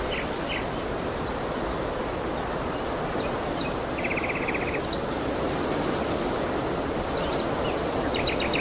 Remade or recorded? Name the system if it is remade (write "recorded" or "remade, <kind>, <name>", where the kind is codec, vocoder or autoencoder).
recorded